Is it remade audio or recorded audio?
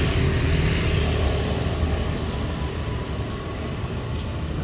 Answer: recorded